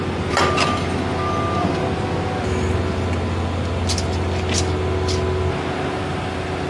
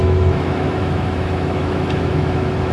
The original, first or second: first